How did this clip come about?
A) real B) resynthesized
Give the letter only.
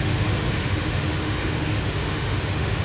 B